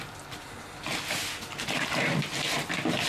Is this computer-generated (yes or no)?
no